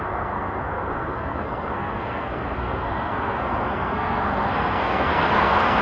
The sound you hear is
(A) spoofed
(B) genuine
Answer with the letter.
A